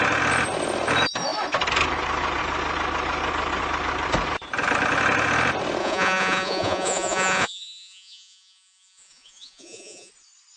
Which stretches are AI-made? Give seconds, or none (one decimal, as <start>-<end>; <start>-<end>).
5.8-10.1